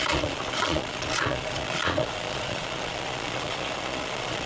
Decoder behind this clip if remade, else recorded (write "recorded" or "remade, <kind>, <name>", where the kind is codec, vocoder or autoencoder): remade, vocoder, Vocos